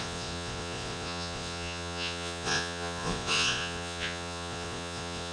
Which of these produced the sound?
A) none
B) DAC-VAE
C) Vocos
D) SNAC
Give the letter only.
C